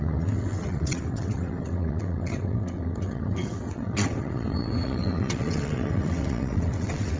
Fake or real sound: fake